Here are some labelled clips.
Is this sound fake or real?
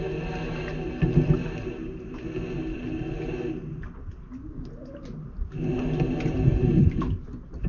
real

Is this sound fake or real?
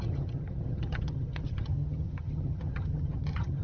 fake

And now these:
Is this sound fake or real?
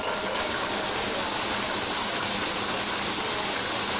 real